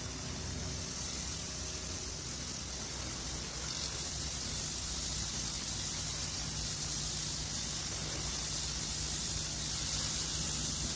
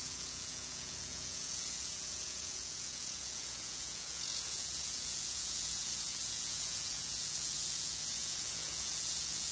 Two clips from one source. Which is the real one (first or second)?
first